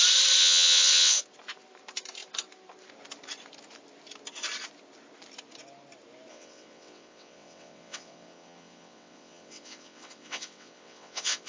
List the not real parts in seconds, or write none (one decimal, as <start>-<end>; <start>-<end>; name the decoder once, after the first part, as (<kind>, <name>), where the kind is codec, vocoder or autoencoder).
0.4-1.2 (vocoder, WaveNeXt); 6.3-11.5